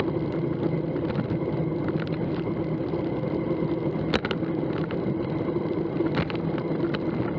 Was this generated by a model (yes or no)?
no